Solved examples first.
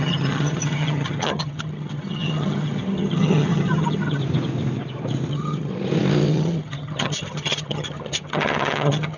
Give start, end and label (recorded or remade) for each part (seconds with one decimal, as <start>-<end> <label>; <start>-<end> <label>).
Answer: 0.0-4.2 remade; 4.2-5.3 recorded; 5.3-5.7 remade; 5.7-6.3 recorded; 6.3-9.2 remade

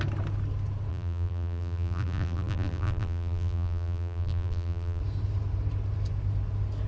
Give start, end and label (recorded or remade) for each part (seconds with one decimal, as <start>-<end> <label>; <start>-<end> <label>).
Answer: 0.0-0.9 recorded; 0.9-5.0 remade; 5.0-6.9 recorded

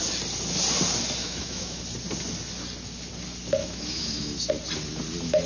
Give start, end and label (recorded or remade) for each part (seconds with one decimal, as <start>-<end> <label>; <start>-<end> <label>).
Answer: 0.0-1.2 recorded; 1.2-1.8 remade; 1.8-3.6 recorded; 3.6-4.5 remade; 4.5-5.5 recorded